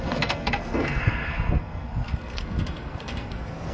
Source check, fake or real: fake